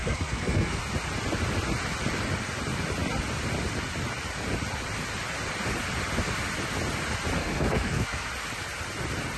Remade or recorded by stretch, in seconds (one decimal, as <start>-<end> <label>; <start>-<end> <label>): 0.0-0.8 remade; 0.8-7.4 recorded; 7.4-8.3 remade; 8.3-9.4 recorded